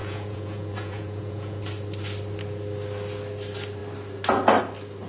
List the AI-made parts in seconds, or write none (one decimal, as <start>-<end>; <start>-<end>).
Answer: 0.0-1.6